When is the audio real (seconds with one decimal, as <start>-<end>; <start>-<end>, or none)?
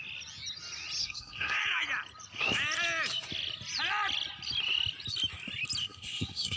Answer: 0.0-1.0; 1.6-5.8